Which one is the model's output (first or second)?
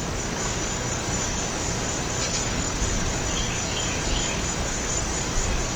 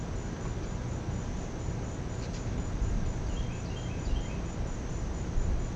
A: first